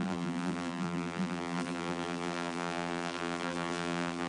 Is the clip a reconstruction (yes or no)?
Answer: yes